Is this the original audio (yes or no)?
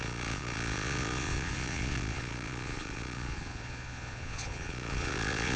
no